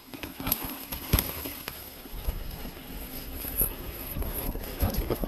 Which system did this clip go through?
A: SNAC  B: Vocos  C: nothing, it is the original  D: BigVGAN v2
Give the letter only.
A